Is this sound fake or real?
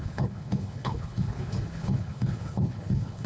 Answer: fake